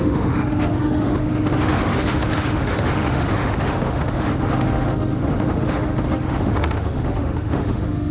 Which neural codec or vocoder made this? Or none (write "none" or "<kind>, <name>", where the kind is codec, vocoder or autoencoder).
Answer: autoencoder, DAC-VAE